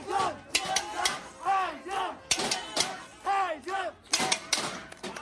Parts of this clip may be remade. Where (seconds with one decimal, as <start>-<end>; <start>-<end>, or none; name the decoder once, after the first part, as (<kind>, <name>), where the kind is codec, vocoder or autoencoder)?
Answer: none